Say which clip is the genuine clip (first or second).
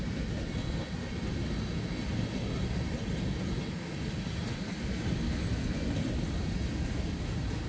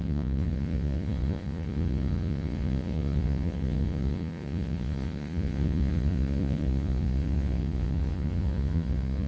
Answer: first